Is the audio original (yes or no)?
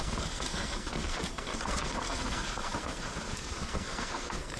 no